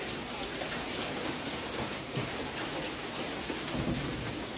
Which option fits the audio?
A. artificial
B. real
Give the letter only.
B